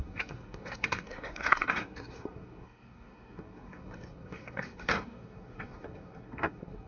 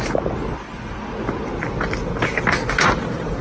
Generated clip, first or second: first